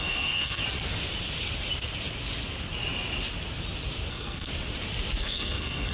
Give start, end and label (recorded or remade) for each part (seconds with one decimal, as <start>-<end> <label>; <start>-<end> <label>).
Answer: 0.0-0.6 remade; 0.6-4.1 recorded; 4.1-4.5 remade; 4.5-5.2 recorded; 5.2-5.9 remade